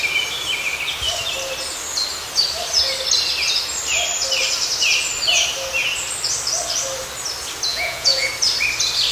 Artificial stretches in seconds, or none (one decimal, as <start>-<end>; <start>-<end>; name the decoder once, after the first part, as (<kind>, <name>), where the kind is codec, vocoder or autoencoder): 7.7-8.3 (vocoder, Vocos)